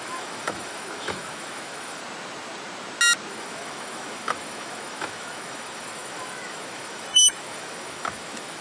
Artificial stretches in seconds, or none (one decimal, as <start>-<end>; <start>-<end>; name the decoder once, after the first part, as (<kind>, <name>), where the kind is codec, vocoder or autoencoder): 0.0-2.0 (autoencoder, DAC-VAE); 3.3-8.6